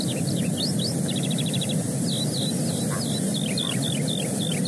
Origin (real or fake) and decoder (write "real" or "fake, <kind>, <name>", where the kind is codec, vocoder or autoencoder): real